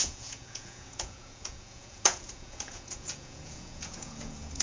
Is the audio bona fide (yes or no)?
no